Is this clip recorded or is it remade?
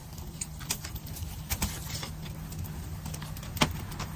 recorded